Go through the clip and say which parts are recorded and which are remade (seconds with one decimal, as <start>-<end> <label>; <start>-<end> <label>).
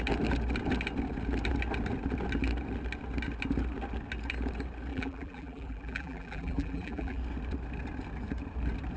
0.0-4.9 recorded; 4.9-7.2 remade; 7.2-9.0 recorded